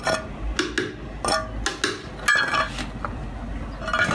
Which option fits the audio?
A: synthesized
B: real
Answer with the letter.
B